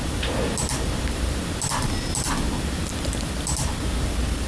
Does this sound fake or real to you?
real